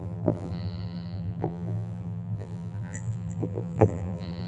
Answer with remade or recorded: remade